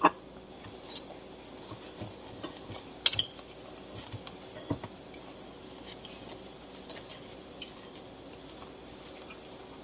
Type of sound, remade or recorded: recorded